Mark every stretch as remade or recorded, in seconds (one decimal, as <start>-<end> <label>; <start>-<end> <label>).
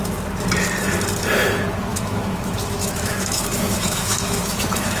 0.0-1.9 recorded; 1.9-5.0 remade